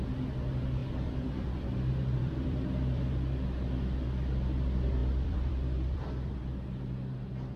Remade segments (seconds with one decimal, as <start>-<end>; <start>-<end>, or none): 0.8-3.1; 5.0-6.3